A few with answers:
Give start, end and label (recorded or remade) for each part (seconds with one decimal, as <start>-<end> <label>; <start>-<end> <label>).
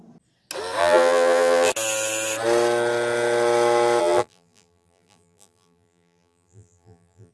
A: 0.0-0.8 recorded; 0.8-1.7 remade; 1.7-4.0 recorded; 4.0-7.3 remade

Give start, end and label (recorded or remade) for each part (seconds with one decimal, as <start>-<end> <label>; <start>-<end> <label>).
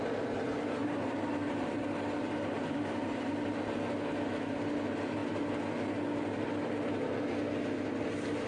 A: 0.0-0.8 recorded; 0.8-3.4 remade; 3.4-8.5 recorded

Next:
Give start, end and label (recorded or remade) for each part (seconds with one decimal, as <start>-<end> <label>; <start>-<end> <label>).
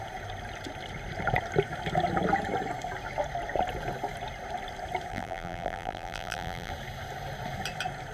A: 0.0-5.1 recorded; 5.1-6.7 remade; 6.7-8.1 recorded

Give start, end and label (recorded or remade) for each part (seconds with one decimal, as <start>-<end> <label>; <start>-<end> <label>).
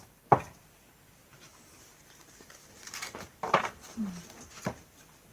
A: 0.0-1.2 recorded; 1.2-4.2 remade; 4.2-5.3 recorded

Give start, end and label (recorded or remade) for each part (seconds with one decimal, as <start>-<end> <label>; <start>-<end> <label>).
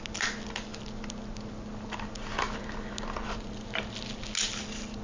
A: 0.0-3.2 recorded; 3.2-3.9 remade; 3.9-5.0 recorded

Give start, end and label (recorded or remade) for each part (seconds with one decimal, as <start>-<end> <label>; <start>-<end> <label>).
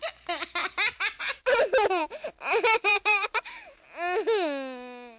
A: 0.0-0.6 recorded; 0.6-2.1 remade; 2.1-2.9 recorded; 2.9-3.6 remade; 3.6-5.2 recorded